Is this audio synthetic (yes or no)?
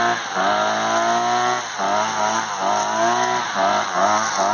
no